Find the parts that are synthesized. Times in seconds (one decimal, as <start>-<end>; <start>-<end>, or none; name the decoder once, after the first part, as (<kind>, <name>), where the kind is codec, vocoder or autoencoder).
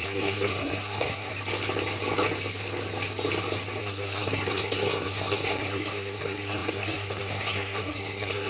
0.0-1.3 (codec, SNAC); 3.8-8.5